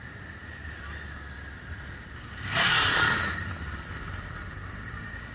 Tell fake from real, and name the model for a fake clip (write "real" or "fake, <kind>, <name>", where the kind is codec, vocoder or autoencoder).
real